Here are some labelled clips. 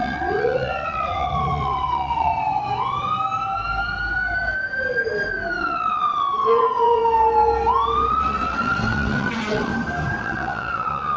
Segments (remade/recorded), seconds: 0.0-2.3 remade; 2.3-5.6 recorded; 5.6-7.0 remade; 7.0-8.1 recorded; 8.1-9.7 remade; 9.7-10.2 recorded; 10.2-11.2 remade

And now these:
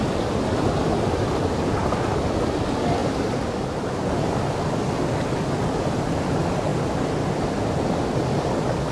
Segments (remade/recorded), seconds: 0.0-0.8 recorded; 0.8-1.8 remade; 1.8-3.0 recorded; 3.0-3.6 remade; 3.6-8.9 recorded

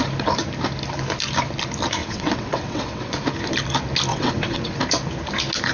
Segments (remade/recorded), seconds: 0.0-2.0 recorded; 2.0-3.1 remade; 3.1-4.1 recorded; 4.1-4.8 remade; 4.8-5.7 recorded

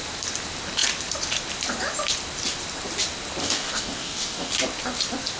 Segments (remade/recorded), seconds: 0.0-3.4 recorded; 3.4-4.5 remade; 4.5-5.4 recorded

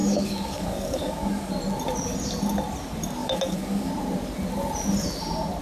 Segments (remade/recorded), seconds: 0.0-1.5 remade; 1.5-3.2 recorded; 3.2-3.9 remade; 3.9-5.6 recorded

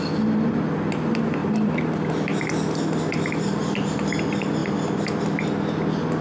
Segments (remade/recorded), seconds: 0.0-6.2 recorded